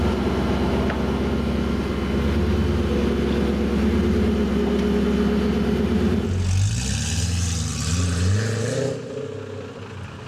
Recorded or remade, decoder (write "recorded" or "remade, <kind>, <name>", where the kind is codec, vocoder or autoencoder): recorded